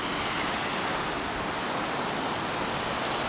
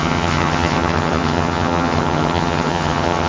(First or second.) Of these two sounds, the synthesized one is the second